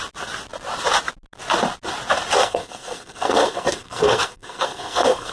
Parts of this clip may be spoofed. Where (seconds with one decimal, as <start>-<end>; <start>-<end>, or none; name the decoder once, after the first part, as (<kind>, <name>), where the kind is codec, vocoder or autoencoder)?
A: 2.4-5.3 (codec, SNAC)